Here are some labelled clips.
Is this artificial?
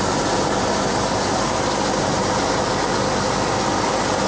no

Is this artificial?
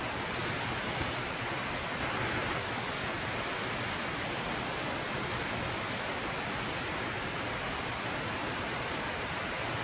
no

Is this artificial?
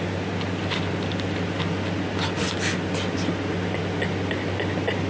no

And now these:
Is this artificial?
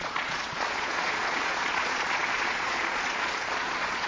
yes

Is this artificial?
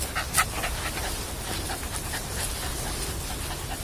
no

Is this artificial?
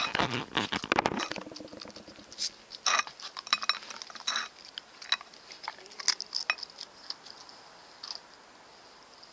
no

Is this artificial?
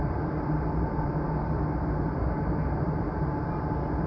no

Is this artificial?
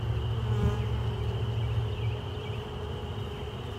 no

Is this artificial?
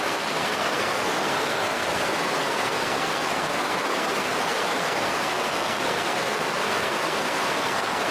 yes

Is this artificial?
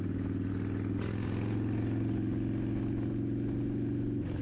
no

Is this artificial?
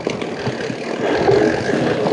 no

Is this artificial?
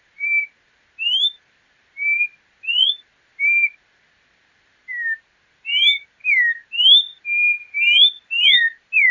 no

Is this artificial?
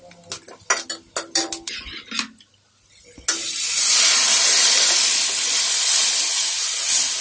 no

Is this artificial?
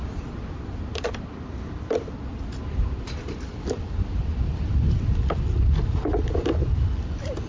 yes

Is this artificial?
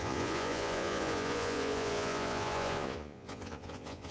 yes